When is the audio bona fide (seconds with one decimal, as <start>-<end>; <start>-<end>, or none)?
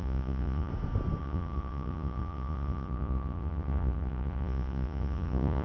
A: 0.7-1.2